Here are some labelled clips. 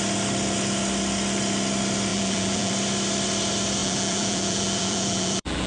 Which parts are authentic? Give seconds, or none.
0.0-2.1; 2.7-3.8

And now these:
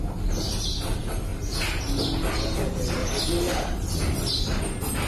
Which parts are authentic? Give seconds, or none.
0.0-3.0; 4.6-5.1

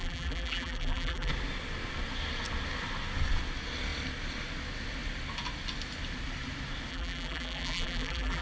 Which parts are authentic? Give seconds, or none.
1.3-6.9

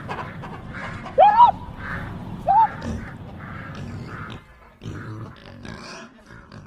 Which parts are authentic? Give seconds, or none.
0.0-0.8; 1.5-1.9; 2.5-5.4; 6.2-6.7

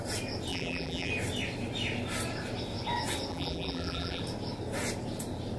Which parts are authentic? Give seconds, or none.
0.0-0.5; 1.1-3.3; 4.2-5.6

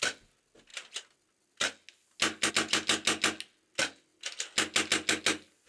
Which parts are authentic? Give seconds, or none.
0.0-5.7

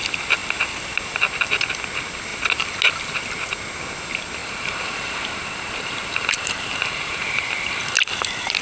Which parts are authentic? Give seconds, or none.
0.0-4.4; 7.8-8.6